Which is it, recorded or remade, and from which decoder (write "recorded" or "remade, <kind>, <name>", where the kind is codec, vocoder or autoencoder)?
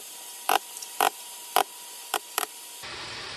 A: remade, vocoder, BigVGAN v2